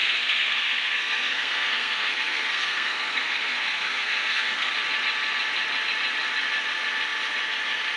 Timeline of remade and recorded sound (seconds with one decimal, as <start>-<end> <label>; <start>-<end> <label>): 0.0-4.7 remade; 4.7-8.0 recorded